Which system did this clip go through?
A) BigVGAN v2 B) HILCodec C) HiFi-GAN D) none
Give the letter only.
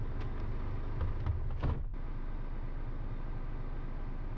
D